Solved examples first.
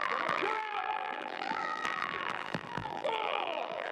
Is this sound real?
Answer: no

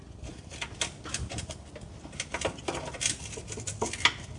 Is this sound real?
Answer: yes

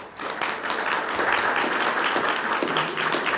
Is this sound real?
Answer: yes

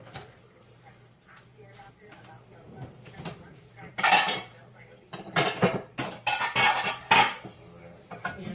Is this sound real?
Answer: no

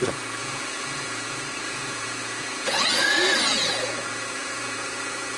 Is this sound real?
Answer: no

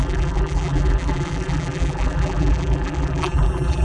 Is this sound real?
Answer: no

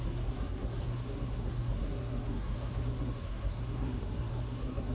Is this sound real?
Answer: no